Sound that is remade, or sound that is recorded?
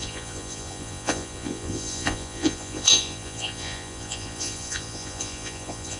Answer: remade